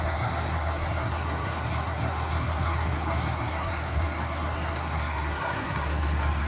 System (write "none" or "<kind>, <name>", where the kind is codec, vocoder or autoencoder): codec, SNAC